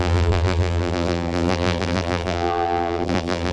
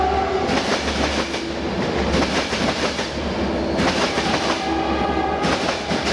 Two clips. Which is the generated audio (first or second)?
first